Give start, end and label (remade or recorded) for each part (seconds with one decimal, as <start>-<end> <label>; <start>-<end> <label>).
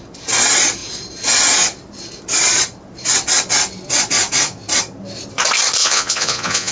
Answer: 0.0-5.8 recorded; 5.8-6.7 remade